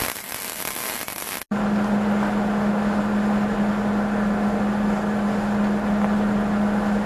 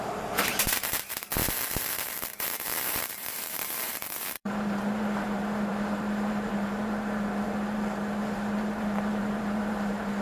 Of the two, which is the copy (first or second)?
second